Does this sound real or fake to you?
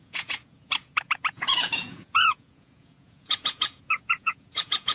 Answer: fake